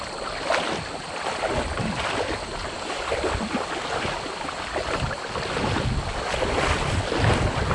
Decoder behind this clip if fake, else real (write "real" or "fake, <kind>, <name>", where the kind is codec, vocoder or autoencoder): real